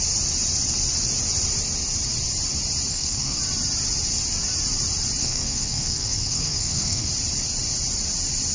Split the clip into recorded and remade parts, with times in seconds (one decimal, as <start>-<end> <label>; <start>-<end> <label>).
0.0-2.9 recorded; 2.9-3.4 remade; 3.4-5.2 recorded; 5.2-7.1 remade; 7.1-8.5 recorded